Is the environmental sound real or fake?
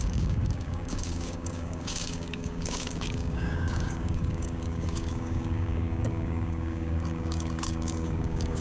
fake